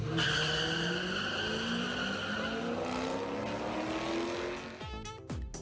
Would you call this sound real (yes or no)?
yes